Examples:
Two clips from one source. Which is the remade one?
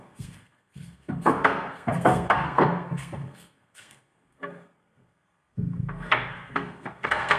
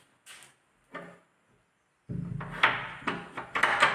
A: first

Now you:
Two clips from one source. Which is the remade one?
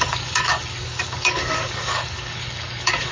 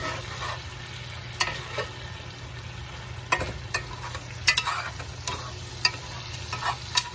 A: first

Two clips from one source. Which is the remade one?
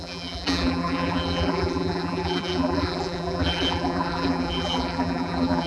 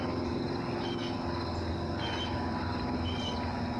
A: first